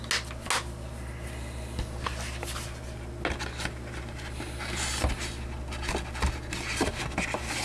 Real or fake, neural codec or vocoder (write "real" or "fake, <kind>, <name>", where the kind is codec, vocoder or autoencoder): real